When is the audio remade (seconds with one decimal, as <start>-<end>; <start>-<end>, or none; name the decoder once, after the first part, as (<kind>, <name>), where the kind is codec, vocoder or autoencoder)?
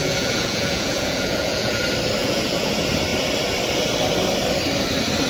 0.0-1.8 (vocoder, Vocos); 2.2-2.7